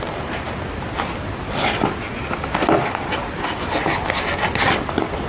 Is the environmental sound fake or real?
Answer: real